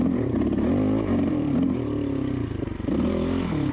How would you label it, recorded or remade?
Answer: recorded